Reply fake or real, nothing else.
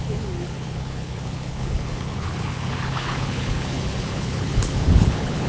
fake